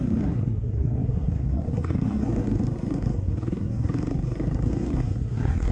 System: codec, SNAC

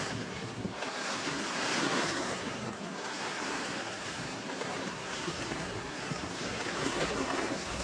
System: codec, SNAC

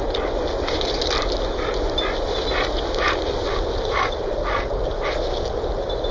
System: none